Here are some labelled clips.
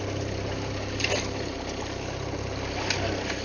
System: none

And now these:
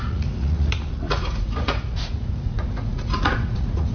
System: vocoder, Vocos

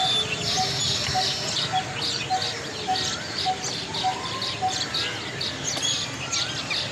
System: none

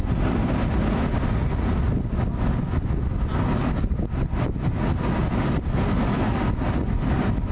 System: none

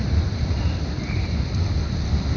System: none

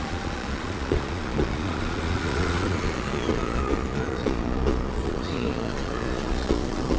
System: vocoder, Vocos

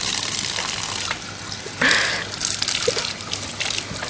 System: none